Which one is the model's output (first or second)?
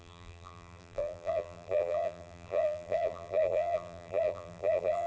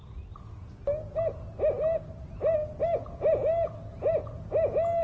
first